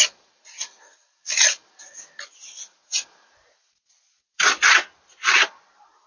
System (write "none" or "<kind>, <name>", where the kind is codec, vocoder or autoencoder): none